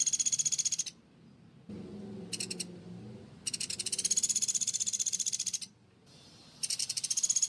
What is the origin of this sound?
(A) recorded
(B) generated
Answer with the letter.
A